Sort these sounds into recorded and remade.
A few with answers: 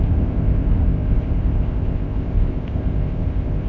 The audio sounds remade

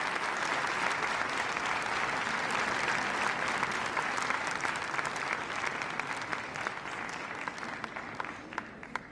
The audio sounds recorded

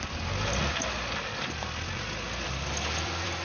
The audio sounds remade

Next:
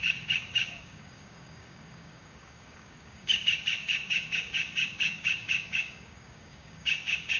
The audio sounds remade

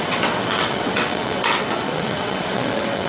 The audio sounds remade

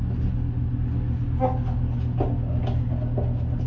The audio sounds recorded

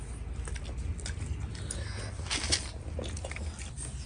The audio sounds recorded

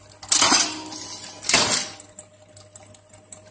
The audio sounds recorded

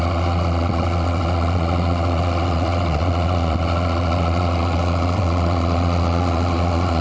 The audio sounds remade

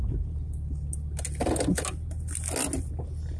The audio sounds recorded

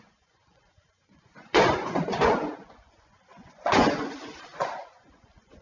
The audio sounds remade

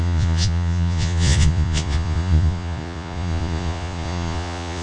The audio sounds remade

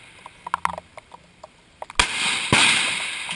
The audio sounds recorded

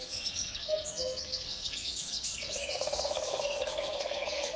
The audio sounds remade